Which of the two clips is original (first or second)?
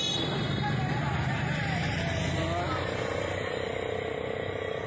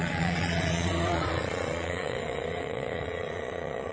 first